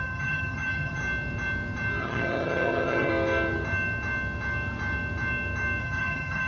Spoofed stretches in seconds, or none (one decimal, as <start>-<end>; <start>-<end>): 0.0-1.0; 2.0-3.1; 5.8-6.5

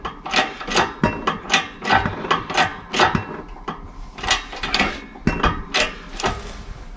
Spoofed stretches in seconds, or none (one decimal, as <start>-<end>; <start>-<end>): none

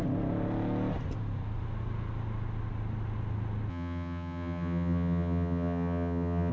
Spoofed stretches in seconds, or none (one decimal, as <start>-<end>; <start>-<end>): 3.7-6.5

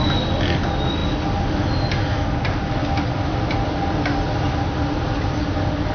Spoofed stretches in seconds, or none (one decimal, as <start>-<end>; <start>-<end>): none

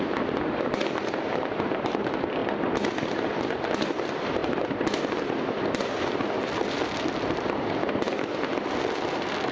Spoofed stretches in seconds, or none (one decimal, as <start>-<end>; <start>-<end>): none

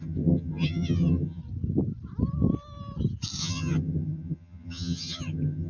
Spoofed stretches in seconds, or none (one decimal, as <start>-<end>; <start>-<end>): 0.0-1.4; 3.4-5.7

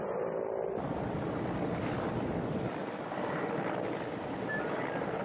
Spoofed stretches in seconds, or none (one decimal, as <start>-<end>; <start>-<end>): none

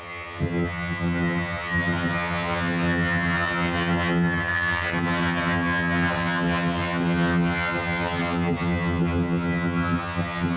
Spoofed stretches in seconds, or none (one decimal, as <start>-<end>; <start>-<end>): 0.0-10.6